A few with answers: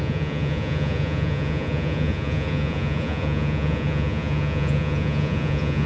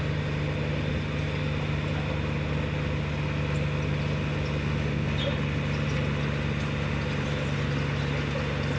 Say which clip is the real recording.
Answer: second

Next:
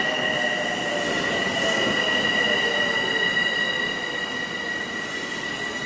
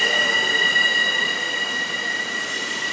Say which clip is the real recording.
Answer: first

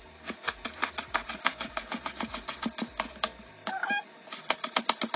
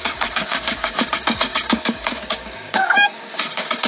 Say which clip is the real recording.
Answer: first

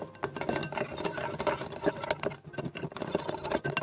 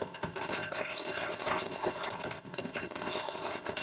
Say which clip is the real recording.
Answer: first